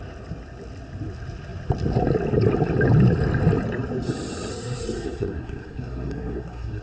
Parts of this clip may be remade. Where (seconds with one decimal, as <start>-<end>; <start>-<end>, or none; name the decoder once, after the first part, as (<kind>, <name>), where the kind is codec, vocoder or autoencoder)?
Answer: 4.5-6.8 (codec, SNAC)